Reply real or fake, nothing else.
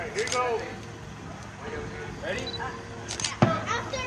real